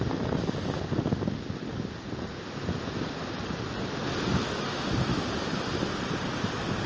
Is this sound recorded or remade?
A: recorded